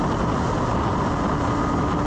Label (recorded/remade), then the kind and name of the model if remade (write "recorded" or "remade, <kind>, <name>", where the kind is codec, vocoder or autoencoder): recorded